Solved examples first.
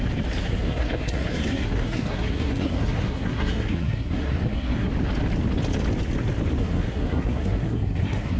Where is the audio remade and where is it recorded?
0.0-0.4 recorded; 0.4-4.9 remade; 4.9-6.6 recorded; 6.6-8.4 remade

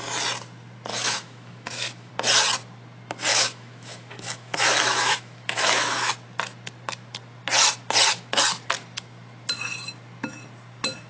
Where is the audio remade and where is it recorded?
0.0-0.9 recorded; 0.9-2.1 remade; 2.1-3.3 recorded; 3.3-6.1 remade; 6.1-11.1 recorded

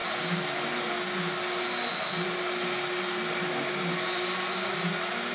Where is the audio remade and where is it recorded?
0.0-5.3 recorded

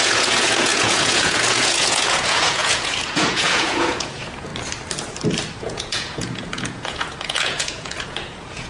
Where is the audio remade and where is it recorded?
0.0-4.5 remade; 4.5-5.6 recorded; 5.6-8.7 remade

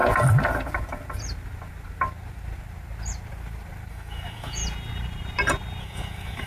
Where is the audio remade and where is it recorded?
0.0-3.9 recorded; 3.9-4.6 remade; 4.6-5.8 recorded; 5.8-6.5 remade